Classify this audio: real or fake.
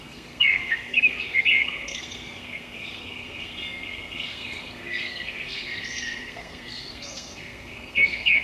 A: fake